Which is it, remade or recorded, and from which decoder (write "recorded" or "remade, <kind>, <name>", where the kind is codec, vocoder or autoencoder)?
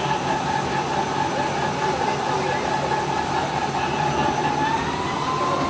recorded